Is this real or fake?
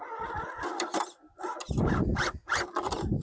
real